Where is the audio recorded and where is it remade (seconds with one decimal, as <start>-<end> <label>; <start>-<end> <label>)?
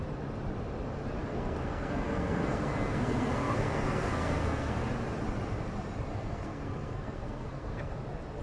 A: 0.0-1.2 recorded; 1.2-4.9 remade; 4.9-6.1 recorded; 6.1-7.9 remade; 7.9-8.4 recorded